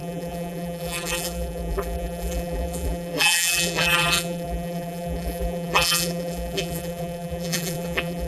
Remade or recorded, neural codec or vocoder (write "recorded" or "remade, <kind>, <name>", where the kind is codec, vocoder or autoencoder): remade, vocoder, BigVGAN v2